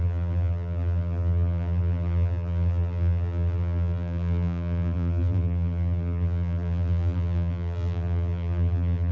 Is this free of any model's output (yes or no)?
no